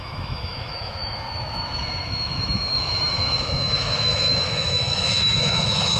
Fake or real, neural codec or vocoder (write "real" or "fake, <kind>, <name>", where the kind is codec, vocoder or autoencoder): fake, autoencoder, DAC-VAE